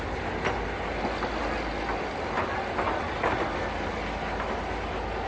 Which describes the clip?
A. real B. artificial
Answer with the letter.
A